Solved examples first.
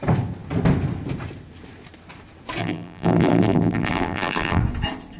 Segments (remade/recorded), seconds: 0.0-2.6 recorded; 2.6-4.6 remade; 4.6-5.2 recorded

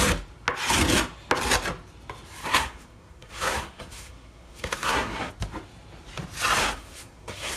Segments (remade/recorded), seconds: 0.0-2.4 recorded; 2.4-5.3 remade; 5.3-6.6 recorded; 6.6-7.6 remade

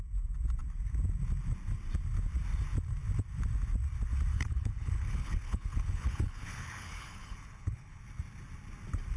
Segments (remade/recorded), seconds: 0.0-4.3 recorded; 4.3-8.0 remade; 8.0-9.2 recorded